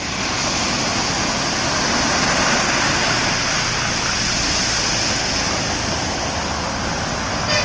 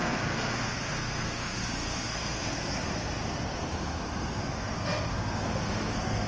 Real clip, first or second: first